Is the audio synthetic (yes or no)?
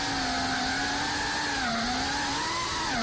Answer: no